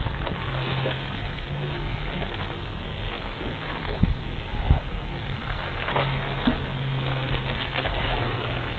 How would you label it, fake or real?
fake